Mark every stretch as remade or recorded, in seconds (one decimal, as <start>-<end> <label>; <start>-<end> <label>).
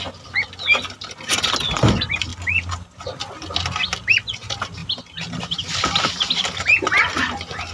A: 0.0-7.7 recorded